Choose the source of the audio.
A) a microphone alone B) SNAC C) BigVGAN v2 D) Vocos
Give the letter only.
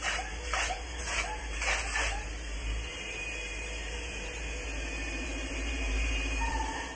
C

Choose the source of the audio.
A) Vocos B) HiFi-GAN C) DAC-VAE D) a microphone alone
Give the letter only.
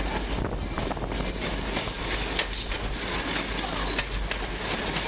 D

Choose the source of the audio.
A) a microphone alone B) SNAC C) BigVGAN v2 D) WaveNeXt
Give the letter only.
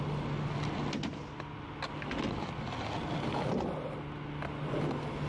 A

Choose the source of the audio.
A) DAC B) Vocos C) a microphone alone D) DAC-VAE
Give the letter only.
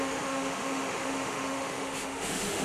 D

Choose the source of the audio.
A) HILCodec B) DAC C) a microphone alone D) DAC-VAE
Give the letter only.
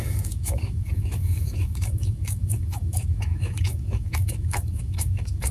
D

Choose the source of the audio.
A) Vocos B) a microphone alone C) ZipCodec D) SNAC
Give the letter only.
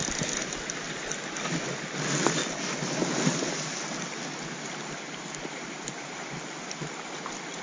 B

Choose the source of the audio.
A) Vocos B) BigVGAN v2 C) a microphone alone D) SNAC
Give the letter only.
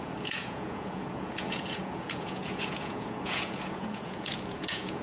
A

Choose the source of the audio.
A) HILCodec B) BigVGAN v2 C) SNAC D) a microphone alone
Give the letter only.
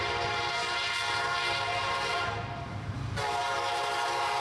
D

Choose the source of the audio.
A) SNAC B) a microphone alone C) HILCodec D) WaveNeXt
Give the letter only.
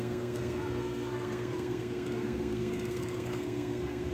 A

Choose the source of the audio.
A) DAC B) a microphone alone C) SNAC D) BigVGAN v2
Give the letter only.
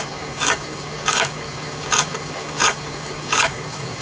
A